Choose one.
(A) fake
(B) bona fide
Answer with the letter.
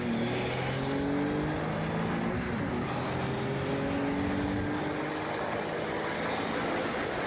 B